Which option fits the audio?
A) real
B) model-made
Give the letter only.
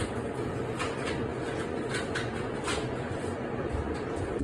B